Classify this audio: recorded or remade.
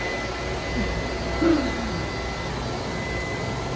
recorded